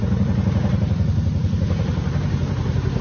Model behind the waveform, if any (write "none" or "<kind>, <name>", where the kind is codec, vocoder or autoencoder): vocoder, BigVGAN v2